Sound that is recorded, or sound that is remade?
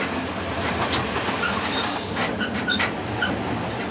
recorded